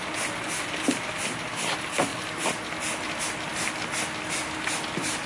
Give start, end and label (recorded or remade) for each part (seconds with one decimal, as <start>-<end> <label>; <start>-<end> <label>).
0.0-5.3 recorded